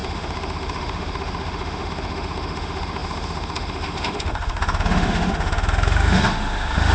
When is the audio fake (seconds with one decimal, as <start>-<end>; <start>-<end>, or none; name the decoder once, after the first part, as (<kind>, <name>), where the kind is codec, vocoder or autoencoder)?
0.0-6.9 (autoencoder, DAC-VAE)